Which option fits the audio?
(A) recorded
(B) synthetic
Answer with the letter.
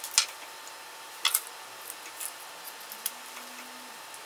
A